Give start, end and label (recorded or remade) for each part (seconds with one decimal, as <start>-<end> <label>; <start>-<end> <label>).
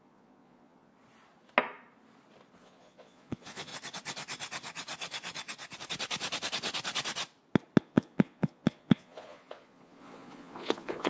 0.0-0.9 remade; 0.9-2.6 recorded; 2.6-3.7 remade; 3.7-7.8 recorded; 7.8-11.1 remade